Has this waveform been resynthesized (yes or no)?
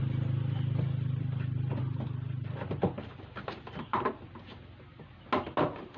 no